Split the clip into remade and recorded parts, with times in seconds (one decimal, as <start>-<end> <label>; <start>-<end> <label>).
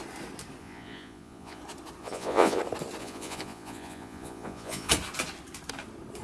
0.0-0.6 recorded; 0.6-1.6 remade; 1.6-2.0 recorded; 2.0-2.6 remade; 2.6-3.0 recorded; 3.0-4.9 remade; 4.9-6.2 recorded